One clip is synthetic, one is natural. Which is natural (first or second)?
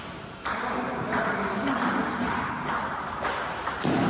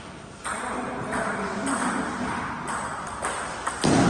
second